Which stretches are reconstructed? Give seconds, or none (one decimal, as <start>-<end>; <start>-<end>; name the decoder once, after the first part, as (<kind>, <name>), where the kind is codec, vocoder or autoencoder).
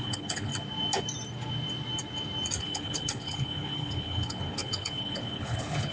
0.0-0.5 (codec, HILCodec); 2.6-5.9